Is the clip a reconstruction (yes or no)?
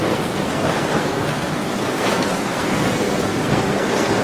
yes